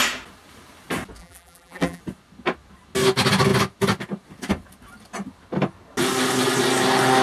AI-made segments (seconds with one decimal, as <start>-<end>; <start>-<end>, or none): 1.2-2.0